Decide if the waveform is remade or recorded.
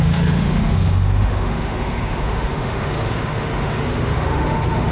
remade